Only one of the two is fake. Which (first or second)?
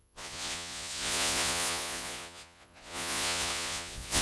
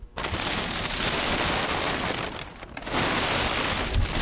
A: first